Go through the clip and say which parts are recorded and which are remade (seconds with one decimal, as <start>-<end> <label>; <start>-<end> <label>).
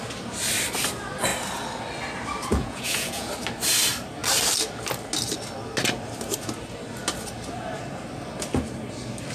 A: 0.0-2.5 recorded; 2.5-3.3 remade; 3.3-9.3 recorded